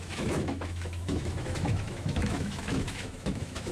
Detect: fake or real fake